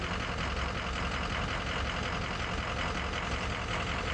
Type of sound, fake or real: real